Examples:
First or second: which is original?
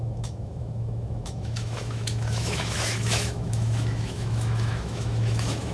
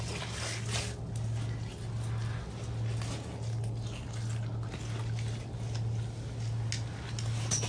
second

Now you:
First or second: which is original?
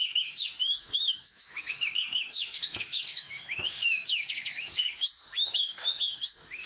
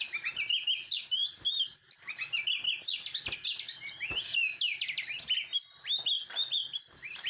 second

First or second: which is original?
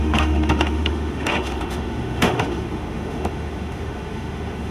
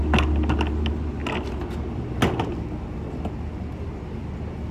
second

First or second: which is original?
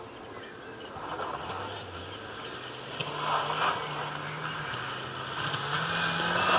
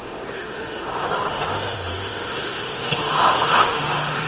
first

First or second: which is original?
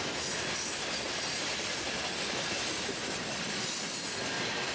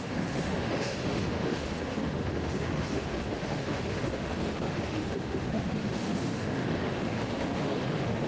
first